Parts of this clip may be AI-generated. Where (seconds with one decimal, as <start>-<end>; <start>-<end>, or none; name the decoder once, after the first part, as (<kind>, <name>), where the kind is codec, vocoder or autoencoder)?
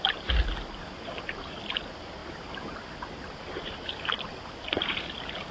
none